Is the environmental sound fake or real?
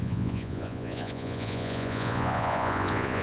fake